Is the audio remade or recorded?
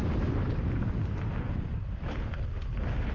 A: recorded